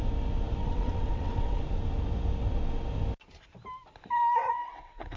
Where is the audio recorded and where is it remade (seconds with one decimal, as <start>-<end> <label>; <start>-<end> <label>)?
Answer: 0.0-0.6 recorded; 0.6-1.6 remade; 1.6-4.4 recorded; 4.4-5.2 remade